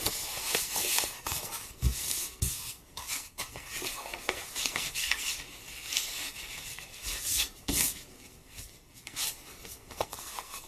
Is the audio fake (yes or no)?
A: yes